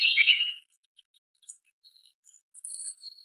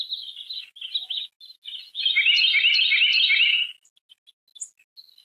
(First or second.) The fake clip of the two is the first